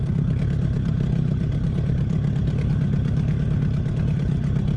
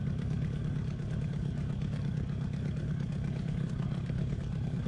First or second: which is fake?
second